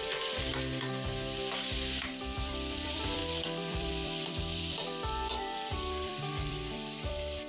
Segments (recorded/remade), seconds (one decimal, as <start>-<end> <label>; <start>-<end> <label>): 0.0-0.5 remade; 0.5-2.1 recorded; 2.1-7.5 remade